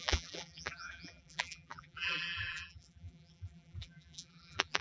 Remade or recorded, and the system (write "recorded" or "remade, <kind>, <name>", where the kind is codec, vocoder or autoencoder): remade, vocoder, BigVGAN v2